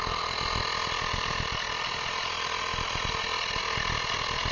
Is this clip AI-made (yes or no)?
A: no